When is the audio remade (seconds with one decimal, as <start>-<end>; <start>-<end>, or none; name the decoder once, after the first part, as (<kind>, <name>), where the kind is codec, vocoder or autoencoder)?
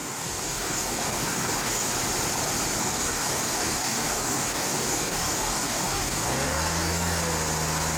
0.0-1.9 (codec, DAC); 2.8-7.2